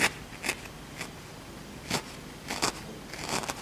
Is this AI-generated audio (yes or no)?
no